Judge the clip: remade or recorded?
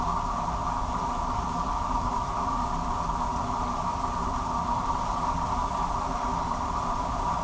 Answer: recorded